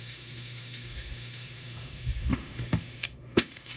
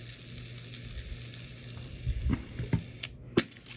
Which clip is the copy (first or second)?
first